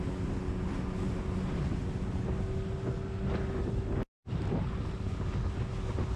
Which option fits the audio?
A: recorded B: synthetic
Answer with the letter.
A